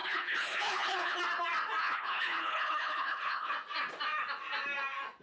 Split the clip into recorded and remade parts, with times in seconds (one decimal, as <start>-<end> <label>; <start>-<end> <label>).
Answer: 0.0-1.2 remade; 1.2-1.8 recorded; 1.8-3.5 remade; 3.5-5.2 recorded